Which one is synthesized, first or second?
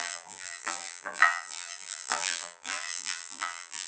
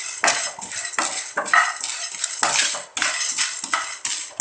first